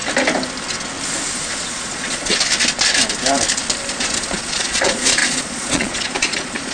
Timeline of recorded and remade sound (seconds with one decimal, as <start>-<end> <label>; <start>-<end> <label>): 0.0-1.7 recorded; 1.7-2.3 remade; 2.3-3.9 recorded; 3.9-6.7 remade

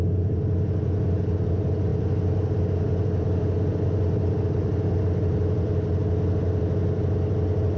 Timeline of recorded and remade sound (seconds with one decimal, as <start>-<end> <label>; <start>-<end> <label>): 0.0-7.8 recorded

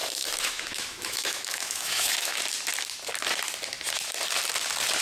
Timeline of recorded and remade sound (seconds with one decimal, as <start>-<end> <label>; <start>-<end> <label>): 0.0-2.4 remade; 2.4-5.0 recorded